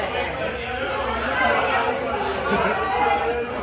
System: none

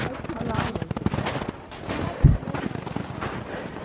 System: none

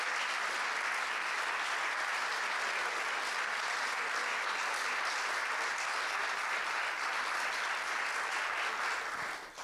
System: none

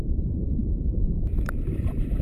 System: vocoder, BigVGAN v2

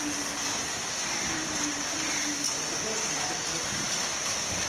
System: none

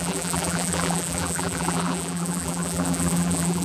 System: vocoder, BigVGAN v2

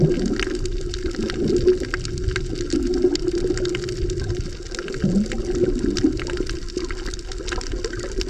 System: none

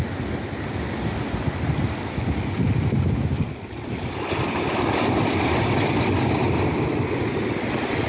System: none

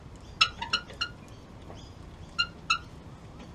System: none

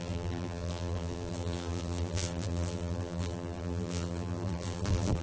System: vocoder, BigVGAN v2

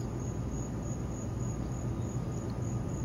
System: none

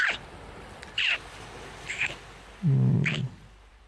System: vocoder, BigVGAN v2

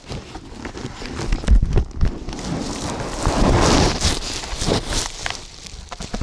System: none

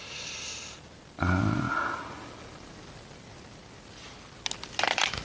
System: none